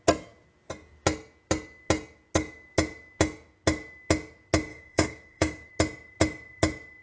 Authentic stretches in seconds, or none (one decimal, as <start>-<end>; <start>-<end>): 0.0-4.7; 5.7-7.0